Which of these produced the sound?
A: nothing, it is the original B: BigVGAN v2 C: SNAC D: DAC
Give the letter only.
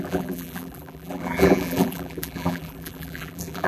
B